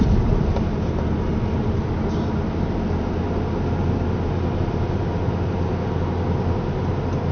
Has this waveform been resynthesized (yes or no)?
no